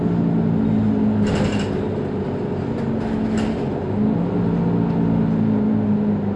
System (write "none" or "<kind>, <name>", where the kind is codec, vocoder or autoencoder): none